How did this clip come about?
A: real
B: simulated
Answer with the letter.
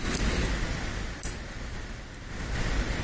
A